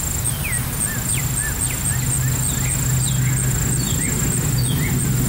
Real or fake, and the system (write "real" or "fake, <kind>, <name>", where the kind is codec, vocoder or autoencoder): real